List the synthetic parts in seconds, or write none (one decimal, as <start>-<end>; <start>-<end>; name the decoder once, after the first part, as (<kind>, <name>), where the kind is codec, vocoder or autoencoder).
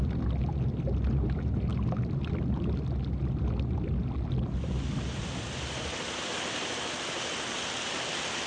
none